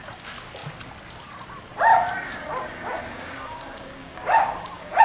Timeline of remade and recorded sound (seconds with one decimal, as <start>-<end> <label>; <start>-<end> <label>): 0.0-1.9 recorded; 1.9-5.0 remade